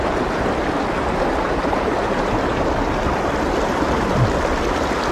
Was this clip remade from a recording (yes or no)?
no